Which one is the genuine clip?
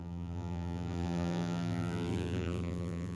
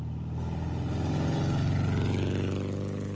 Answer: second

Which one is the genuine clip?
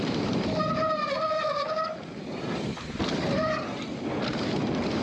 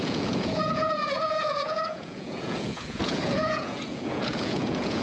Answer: first